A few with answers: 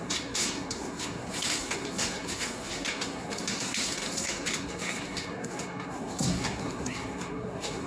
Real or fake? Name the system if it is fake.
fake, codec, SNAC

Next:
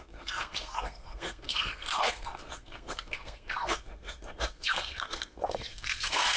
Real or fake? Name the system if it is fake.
fake, codec, SNAC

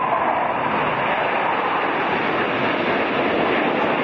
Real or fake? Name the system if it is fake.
real